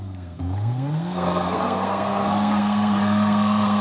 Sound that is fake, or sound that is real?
fake